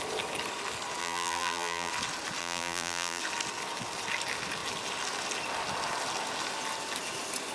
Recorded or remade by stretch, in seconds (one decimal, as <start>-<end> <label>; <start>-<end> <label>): 0.0-1.0 recorded; 1.0-1.9 remade; 1.9-2.4 recorded; 2.4-3.2 remade; 3.2-7.5 recorded